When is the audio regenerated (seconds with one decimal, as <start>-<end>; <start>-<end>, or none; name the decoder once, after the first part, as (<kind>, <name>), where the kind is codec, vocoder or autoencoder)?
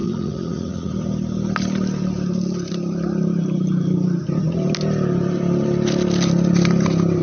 0.0-0.9 (vocoder, Vocos)